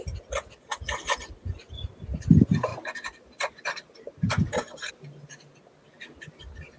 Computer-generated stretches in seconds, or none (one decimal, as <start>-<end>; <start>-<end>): 2.7-4.9